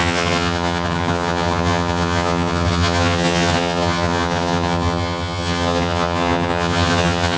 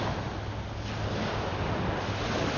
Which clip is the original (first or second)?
second